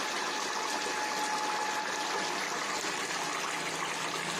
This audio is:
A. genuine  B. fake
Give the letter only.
A